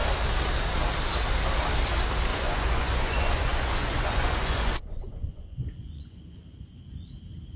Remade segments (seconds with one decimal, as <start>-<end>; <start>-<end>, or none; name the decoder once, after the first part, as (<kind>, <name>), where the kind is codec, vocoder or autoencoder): 2.3-6.8 (vocoder, Vocos)